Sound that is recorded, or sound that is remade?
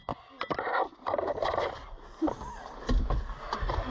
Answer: recorded